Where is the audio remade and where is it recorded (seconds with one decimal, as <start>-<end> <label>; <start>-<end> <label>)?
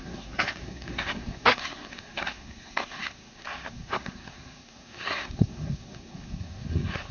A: 0.0-7.1 remade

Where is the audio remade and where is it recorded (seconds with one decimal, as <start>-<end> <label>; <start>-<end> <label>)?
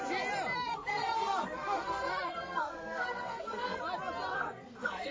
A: 0.0-0.7 recorded; 0.7-3.8 remade; 3.8-4.3 recorded; 4.3-5.1 remade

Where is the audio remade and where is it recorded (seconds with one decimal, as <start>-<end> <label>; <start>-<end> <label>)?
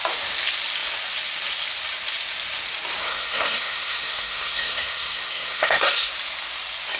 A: 0.0-3.0 recorded; 3.0-6.1 remade; 6.1-7.0 recorded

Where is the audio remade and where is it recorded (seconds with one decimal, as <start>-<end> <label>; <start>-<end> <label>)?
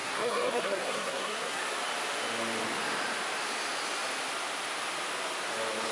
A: 0.0-1.6 remade; 1.6-5.9 recorded